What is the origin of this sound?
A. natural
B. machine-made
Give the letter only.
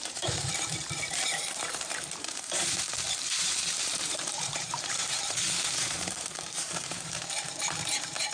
B